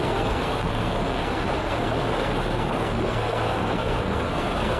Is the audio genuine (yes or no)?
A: no